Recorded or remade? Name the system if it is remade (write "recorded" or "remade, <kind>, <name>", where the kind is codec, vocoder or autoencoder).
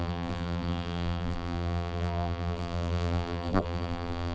remade, vocoder, BigVGAN v2